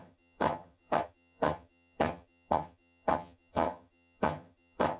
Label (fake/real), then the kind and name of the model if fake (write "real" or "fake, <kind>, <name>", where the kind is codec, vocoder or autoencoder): fake, vocoder, HiFi-GAN